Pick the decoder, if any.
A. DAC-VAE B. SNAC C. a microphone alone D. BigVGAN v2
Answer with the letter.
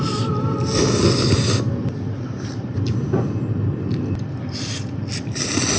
C